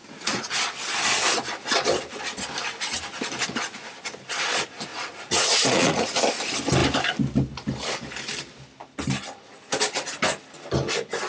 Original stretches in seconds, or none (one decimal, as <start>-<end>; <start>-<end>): 0.5-4.9; 6.2-11.3